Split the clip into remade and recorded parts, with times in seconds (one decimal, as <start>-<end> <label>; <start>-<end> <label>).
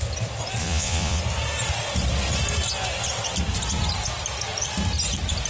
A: 0.0-0.6 recorded; 0.6-1.2 remade; 1.2-5.5 recorded